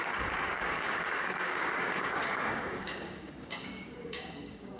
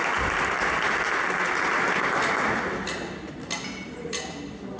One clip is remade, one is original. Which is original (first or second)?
second